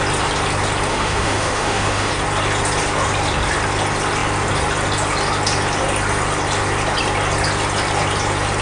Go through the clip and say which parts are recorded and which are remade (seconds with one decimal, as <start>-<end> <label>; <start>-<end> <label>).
0.0-0.9 recorded; 0.9-2.1 remade; 2.1-8.6 recorded